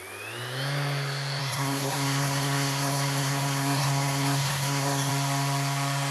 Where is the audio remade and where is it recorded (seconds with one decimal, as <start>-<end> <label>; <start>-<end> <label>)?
0.0-1.4 recorded; 1.4-5.1 remade; 5.1-6.1 recorded